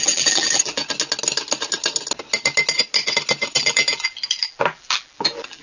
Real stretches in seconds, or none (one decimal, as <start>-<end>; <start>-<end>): 0.8-3.6